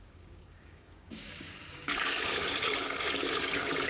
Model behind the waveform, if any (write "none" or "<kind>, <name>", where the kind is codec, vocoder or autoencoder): codec, DAC